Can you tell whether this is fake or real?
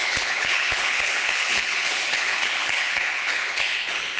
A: fake